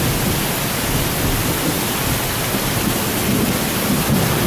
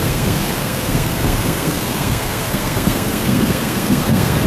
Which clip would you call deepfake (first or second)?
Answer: second